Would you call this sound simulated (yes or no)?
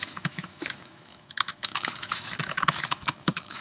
yes